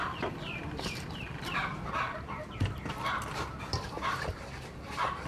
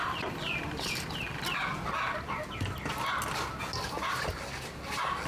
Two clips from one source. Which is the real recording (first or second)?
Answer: second